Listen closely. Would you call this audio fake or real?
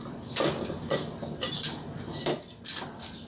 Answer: real